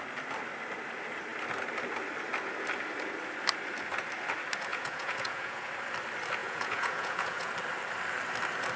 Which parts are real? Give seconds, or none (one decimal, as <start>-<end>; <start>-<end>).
0.0-4.7; 5.7-6.4; 7.5-8.8

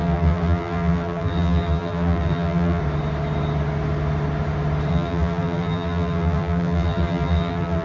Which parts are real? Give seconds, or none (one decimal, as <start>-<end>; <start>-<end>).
2.8-4.9

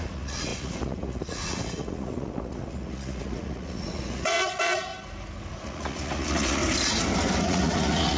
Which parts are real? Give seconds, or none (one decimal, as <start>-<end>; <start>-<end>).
4.9-5.5; 6.6-7.4

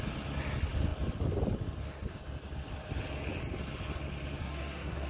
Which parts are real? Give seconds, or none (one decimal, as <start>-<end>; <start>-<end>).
0.0-4.4